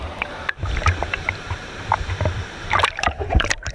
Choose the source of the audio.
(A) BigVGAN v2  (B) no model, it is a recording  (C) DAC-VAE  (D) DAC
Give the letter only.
A